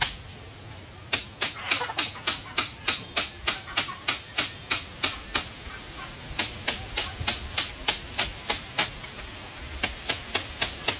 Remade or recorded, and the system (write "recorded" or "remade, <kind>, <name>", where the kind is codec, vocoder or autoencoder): recorded